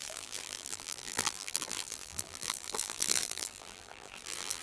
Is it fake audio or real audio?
fake